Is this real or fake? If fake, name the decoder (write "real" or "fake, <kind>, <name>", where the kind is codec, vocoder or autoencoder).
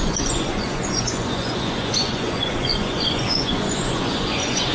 fake, vocoder, Vocos